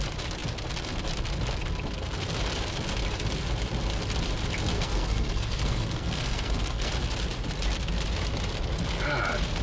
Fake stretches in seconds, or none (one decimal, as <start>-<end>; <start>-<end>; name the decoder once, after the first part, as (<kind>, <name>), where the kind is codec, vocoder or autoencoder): 4.7-6.9 (codec, SNAC)